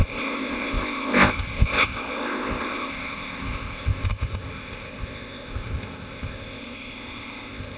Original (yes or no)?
no